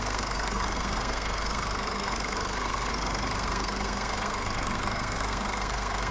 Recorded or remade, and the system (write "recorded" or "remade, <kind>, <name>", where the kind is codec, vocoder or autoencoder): remade, codec, SNAC